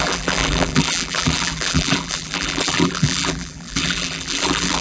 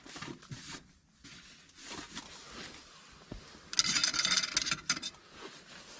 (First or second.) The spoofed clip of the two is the first